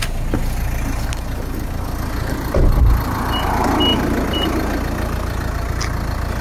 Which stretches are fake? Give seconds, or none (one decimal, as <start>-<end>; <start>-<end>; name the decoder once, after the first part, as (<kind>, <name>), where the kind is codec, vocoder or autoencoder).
3.9-5.7 (vocoder, BigVGAN v2)